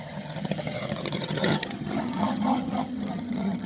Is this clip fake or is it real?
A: fake